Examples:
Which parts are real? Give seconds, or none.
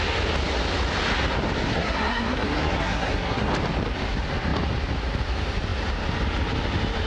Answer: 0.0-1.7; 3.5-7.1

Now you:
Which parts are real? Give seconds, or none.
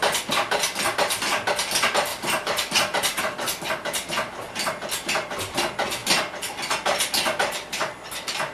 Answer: 0.0-2.1; 3.2-8.5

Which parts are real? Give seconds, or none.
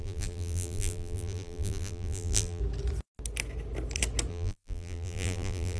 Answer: 2.6-4.3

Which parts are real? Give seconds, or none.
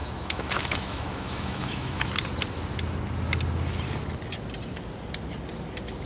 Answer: 2.1-6.1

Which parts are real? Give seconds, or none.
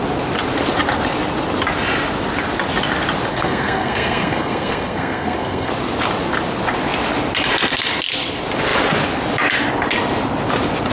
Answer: 0.0-3.3; 5.7-10.9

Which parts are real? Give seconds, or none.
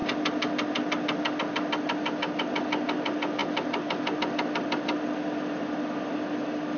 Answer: 0.0-6.8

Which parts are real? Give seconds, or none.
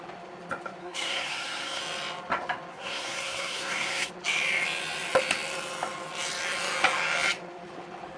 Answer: 0.0-0.8; 1.8-2.7; 4.1-8.2